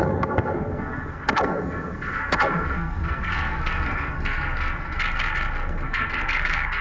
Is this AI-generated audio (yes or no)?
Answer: yes